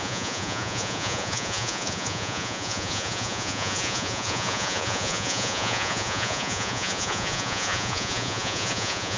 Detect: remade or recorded remade